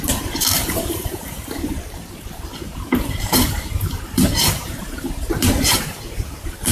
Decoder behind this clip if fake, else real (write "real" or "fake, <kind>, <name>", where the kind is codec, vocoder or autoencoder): fake, vocoder, BigVGAN v2